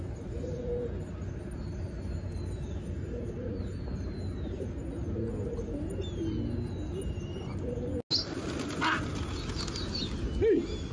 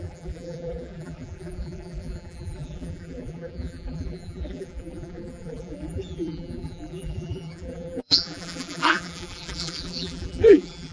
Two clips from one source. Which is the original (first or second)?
first